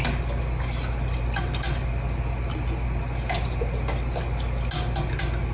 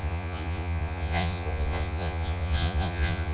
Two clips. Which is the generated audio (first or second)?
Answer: second